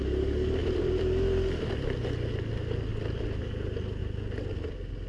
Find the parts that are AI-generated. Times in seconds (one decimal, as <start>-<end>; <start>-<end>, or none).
0.6-1.7; 2.9-3.5